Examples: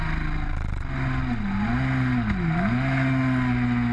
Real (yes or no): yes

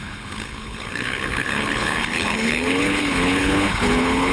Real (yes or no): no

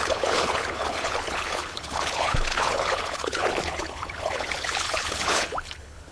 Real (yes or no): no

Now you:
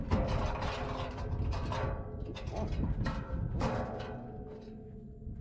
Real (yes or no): yes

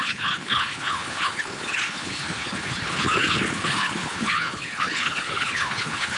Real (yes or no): no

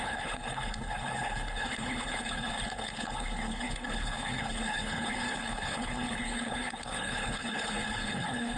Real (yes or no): no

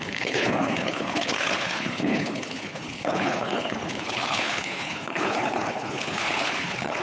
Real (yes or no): no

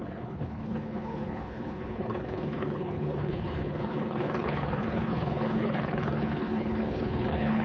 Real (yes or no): no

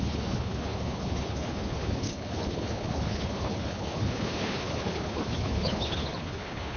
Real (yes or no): no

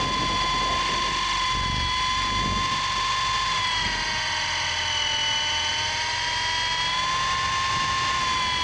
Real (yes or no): yes